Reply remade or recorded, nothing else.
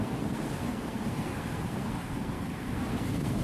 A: remade